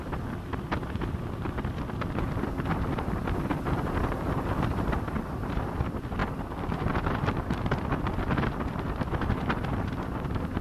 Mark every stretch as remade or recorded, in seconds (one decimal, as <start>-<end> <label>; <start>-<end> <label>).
0.0-10.6 remade